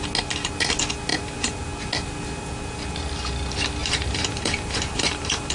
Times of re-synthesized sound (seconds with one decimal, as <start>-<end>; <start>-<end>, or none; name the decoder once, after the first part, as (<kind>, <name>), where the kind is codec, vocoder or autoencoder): 1.1-1.6 (vocoder, BigVGAN v2); 3.8-5.5